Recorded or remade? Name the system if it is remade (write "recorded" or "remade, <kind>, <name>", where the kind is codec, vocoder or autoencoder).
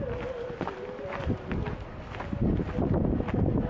recorded